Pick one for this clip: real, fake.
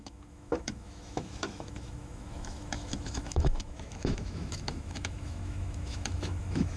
fake